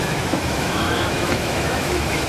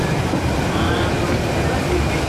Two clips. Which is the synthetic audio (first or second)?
first